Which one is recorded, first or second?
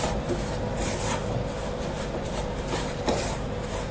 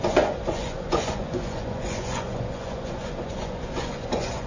first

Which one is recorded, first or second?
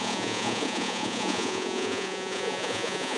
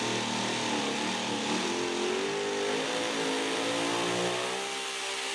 second